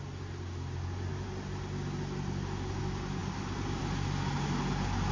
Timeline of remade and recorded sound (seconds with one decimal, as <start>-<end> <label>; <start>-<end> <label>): 0.0-5.1 recorded

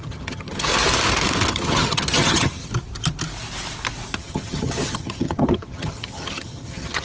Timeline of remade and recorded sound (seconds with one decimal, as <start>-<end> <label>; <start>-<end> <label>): 0.0-0.7 remade; 0.7-1.5 recorded; 1.5-2.7 remade; 2.7-4.2 recorded; 4.2-7.0 remade

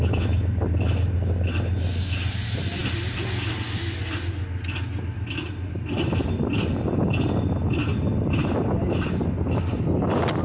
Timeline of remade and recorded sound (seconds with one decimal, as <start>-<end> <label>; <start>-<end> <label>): 0.0-10.4 recorded

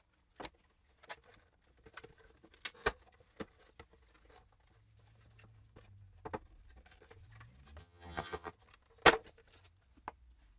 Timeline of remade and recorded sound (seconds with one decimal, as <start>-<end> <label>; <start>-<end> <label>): 0.0-7.8 recorded; 7.8-8.5 remade; 8.5-10.6 recorded

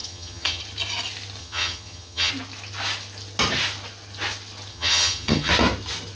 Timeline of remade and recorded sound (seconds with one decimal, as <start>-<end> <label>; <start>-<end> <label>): 0.0-0.6 remade; 0.6-1.4 recorded; 1.4-2.3 remade; 2.3-4.7 recorded; 4.7-5.5 remade; 5.5-6.2 recorded

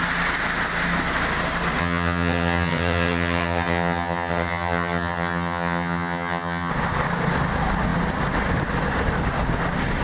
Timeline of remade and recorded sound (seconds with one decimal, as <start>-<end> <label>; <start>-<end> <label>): 0.0-1.8 recorded; 1.8-6.7 remade; 6.7-10.0 recorded

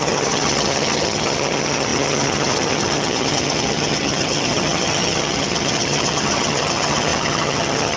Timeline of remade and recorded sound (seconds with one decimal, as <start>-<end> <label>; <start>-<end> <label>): 0.0-8.0 remade

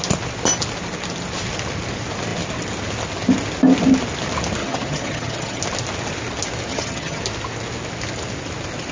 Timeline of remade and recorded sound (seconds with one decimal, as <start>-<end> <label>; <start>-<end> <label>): 0.0-4.6 recorded; 4.6-5.6 remade; 5.6-6.7 recorded; 6.7-7.2 remade; 7.2-8.9 recorded